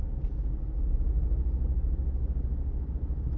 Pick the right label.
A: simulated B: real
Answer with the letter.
B